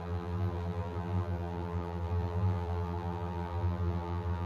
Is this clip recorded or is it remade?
remade